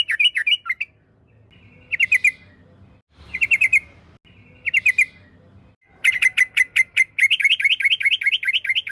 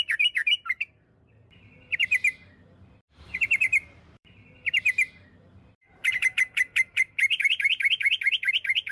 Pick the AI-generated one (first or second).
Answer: second